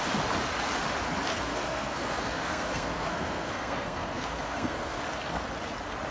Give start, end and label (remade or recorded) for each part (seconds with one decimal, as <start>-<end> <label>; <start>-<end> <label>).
0.0-1.3 recorded; 1.3-5.0 remade; 5.0-6.1 recorded